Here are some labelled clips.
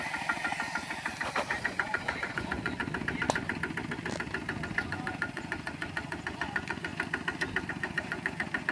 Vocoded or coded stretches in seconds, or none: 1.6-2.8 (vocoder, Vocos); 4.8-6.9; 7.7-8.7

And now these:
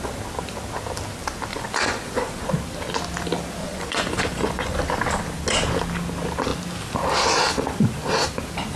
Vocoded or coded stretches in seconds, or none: 1.5-2.5 (vocoder, Vocos); 3.6-4.8

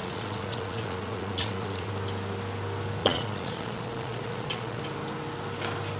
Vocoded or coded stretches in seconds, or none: 0.0-1.9 (vocoder, Vocos); 3.0-4.8

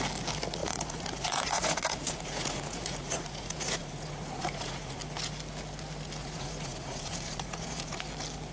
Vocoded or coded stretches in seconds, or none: 0.6-5.0 (vocoder, Vocos); 6.2-8.0

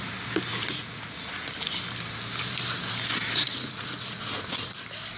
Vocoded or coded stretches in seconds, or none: 0.5-1.3 (vocoder, Vocos); 3.4-4.8